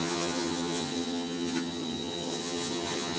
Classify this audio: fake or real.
fake